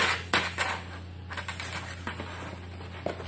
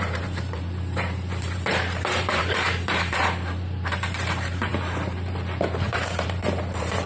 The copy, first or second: second